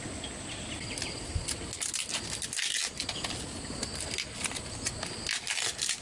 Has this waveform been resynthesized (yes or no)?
no